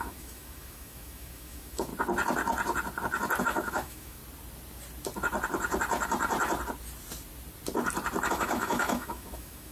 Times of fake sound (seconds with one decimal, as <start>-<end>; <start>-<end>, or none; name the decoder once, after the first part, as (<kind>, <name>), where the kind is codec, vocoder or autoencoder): 0.0-1.9 (autoencoder, DAC-VAE); 3.4-4.2; 8.3-9.7